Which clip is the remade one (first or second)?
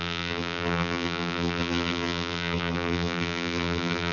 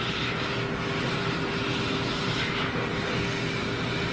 first